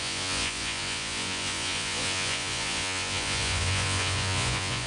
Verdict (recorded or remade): remade